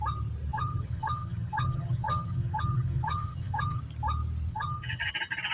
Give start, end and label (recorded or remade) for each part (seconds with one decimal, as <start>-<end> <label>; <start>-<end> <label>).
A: 0.0-0.5 recorded; 0.5-3.8 remade; 3.8-4.5 recorded; 4.5-5.1 remade; 5.1-5.5 recorded